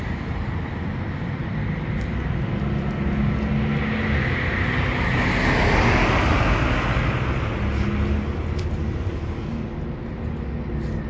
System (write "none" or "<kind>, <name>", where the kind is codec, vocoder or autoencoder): none